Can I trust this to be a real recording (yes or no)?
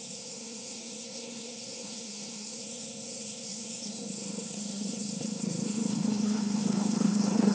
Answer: no